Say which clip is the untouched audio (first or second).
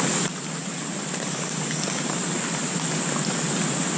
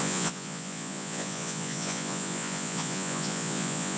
first